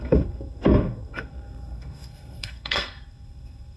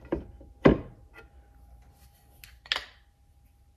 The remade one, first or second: first